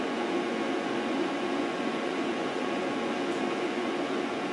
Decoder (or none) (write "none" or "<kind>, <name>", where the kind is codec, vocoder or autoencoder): vocoder, Vocos